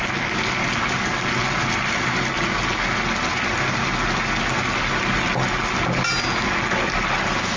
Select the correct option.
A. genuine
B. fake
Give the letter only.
A